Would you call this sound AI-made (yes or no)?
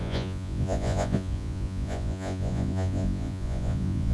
yes